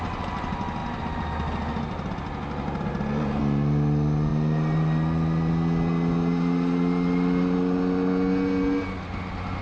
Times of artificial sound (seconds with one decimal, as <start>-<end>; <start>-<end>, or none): none